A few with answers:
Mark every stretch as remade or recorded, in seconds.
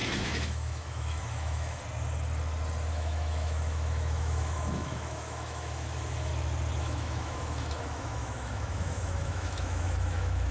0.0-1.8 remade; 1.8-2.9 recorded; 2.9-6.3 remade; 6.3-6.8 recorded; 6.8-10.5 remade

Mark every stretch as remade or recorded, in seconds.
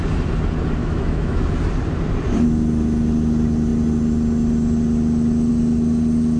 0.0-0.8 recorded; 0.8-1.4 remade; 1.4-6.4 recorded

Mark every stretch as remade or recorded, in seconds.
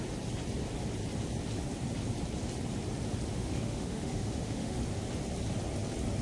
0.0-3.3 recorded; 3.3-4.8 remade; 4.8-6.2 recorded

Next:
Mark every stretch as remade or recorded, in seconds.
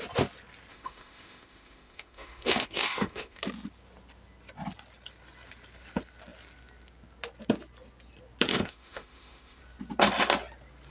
0.0-0.7 recorded; 0.7-3.4 remade; 3.4-8.5 recorded; 8.5-9.6 remade; 9.6-10.9 recorded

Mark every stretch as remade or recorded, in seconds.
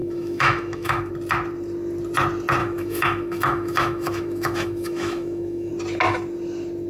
0.0-1.1 remade; 1.1-2.6 recorded; 2.6-5.7 remade; 5.7-6.9 recorded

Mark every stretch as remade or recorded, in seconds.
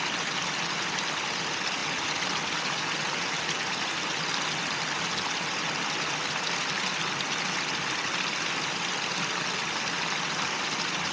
0.0-11.1 recorded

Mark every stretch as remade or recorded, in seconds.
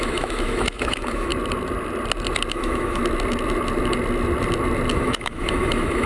0.0-1.3 remade; 1.3-2.5 recorded; 2.5-3.0 remade; 3.0-4.9 recorded; 4.9-6.1 remade